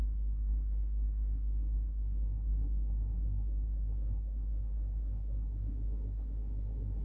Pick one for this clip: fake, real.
fake